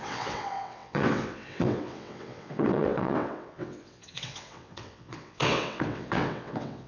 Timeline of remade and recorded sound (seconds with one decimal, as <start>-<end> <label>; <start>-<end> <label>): 0.0-6.9 remade

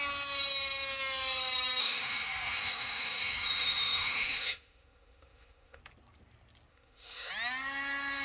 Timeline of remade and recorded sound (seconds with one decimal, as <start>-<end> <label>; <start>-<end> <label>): 0.0-1.8 recorded; 1.8-5.8 remade; 5.8-6.7 recorded; 6.7-7.3 remade; 7.3-8.2 recorded